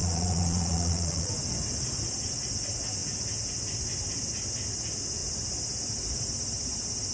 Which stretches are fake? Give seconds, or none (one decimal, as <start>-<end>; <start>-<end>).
0.0-1.3